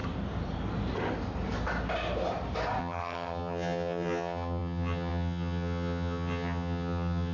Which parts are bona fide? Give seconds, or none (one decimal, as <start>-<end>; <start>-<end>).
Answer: 0.0-2.8